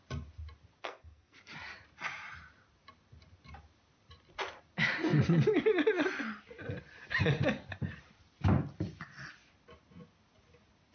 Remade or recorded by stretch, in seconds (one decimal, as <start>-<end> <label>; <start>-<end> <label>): 0.0-0.8 recorded; 0.8-1.4 remade; 1.4-10.9 recorded